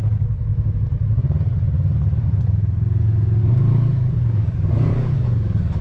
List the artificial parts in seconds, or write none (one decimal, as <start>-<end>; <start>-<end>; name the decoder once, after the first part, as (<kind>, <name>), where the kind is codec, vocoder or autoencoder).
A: 0.0-0.5 (codec, DAC); 3.4-5.8